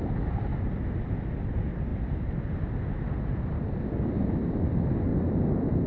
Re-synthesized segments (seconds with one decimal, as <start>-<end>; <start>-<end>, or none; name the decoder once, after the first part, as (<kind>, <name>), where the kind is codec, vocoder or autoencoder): 0.5-1.1 (vocoder, BigVGAN v2); 5.1-5.9